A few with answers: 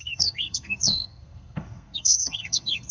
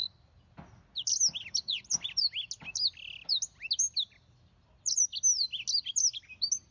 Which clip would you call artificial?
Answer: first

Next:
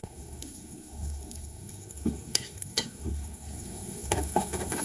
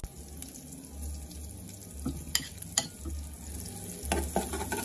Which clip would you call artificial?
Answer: first